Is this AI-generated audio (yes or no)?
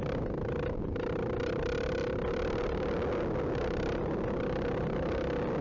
no